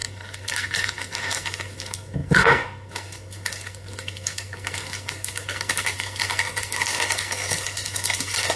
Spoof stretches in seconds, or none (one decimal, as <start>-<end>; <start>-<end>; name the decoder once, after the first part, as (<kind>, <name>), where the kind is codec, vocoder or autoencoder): 0.0-8.6 (codec, SNAC)